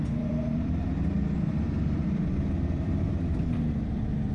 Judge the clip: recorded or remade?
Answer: remade